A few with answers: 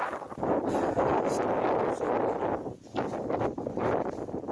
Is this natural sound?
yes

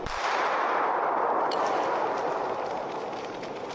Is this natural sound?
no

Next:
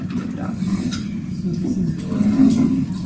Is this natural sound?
yes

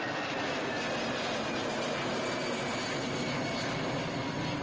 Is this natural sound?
yes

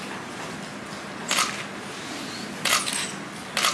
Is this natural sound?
yes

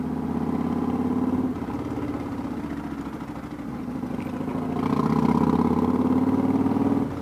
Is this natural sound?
yes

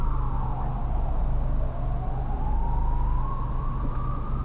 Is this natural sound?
yes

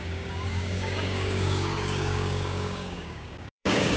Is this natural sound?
no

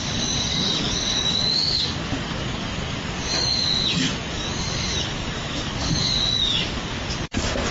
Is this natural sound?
no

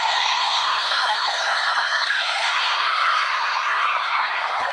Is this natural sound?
no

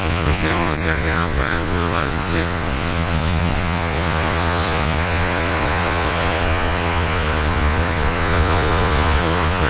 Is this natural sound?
no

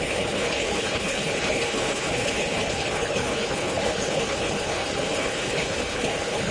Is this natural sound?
no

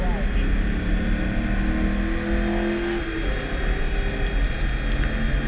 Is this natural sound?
yes